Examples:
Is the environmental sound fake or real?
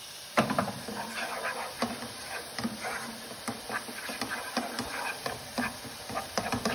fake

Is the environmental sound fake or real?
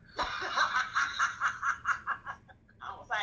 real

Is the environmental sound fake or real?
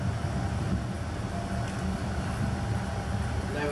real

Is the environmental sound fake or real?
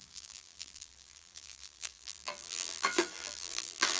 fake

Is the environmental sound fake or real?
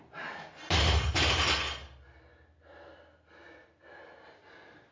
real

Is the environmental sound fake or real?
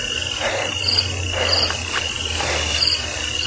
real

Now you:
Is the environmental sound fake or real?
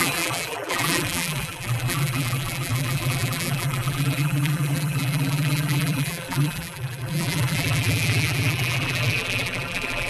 fake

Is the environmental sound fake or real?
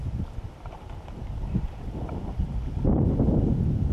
real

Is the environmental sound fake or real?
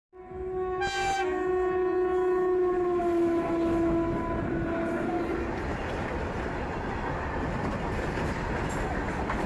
real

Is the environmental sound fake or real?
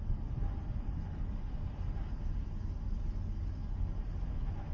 real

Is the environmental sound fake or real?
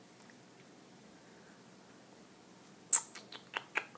real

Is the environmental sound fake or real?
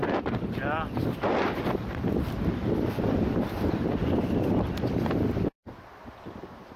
fake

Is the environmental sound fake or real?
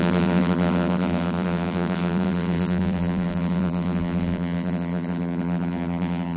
fake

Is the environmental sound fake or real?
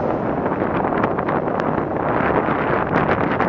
real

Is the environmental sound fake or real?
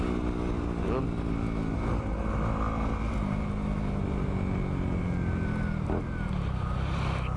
real